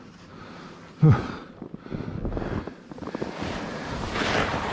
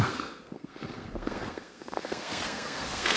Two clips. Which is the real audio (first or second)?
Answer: first